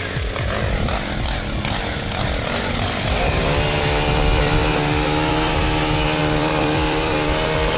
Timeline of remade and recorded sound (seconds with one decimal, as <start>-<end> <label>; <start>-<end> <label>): 0.0-6.2 recorded; 6.2-7.1 remade; 7.1-7.8 recorded